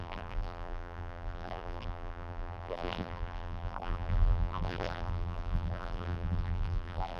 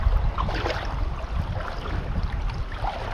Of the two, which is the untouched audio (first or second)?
second